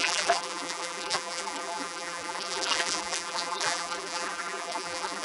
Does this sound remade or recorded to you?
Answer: remade